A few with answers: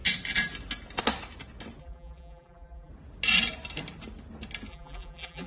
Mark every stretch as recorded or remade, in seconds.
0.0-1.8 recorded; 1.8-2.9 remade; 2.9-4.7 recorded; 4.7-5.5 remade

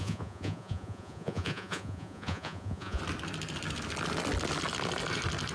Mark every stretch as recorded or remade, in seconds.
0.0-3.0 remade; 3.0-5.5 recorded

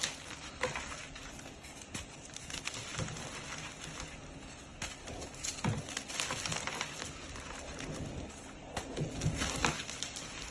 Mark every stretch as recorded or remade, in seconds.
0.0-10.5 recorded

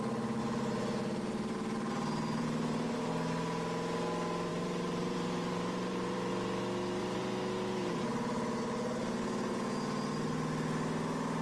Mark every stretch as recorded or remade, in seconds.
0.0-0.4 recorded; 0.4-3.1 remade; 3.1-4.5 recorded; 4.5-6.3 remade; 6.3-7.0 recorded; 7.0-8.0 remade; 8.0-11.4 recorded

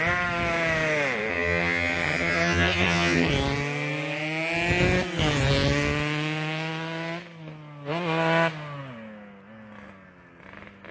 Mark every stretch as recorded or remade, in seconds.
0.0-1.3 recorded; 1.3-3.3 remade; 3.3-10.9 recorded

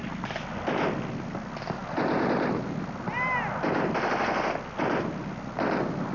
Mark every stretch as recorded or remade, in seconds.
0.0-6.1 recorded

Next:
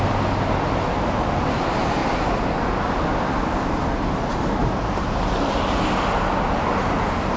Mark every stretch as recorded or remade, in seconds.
0.0-7.4 recorded

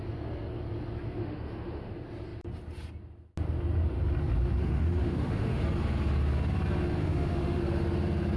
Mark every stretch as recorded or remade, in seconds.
0.0-1.2 recorded; 1.2-1.9 remade; 1.9-4.6 recorded; 4.6-5.6 remade; 5.6-7.0 recorded; 7.0-7.6 remade; 7.6-8.4 recorded